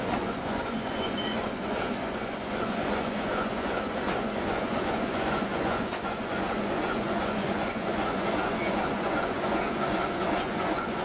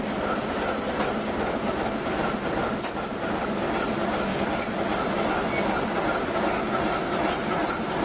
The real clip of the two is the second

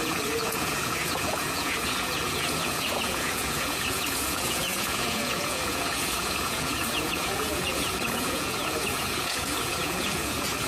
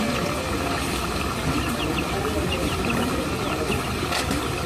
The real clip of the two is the second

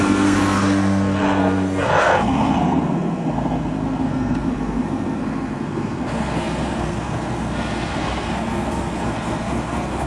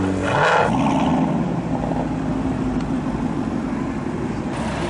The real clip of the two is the second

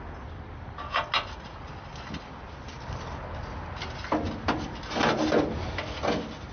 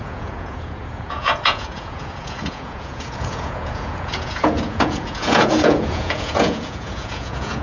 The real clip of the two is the first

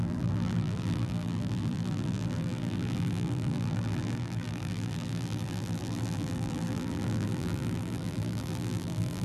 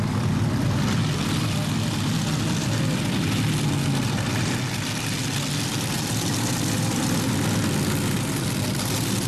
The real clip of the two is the second